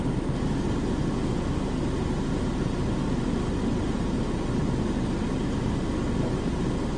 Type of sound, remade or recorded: recorded